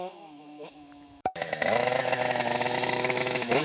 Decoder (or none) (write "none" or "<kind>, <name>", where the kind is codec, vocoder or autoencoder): autoencoder, DAC-VAE